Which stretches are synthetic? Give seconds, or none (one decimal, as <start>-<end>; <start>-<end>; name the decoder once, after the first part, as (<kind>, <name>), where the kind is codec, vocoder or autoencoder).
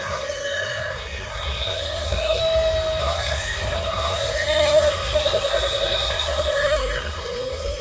0.0-2.4 (codec, SNAC); 3.0-7.8